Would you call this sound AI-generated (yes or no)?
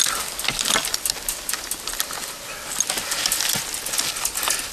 no